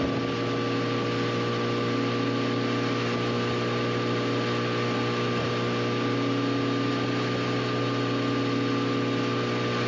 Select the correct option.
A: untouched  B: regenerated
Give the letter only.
A